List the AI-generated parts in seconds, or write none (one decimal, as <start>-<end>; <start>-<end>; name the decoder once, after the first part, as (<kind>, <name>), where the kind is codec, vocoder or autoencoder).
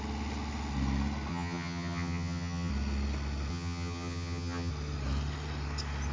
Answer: 1.3-2.7 (vocoder, HiFi-GAN); 3.5-4.7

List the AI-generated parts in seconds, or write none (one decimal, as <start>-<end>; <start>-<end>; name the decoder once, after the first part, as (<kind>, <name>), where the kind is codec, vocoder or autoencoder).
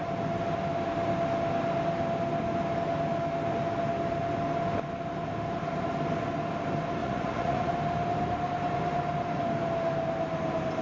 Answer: 7.0-7.7 (vocoder, Vocos)